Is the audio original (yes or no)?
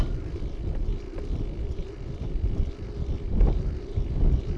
yes